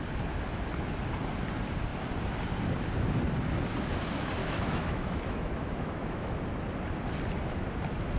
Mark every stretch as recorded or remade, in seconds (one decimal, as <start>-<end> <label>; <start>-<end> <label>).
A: 0.0-4.4 recorded; 4.4-6.4 remade; 6.4-8.2 recorded